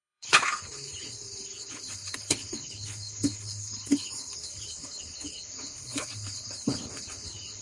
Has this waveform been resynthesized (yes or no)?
yes